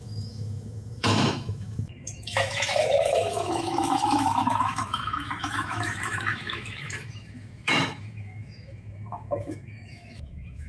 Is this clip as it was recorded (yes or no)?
no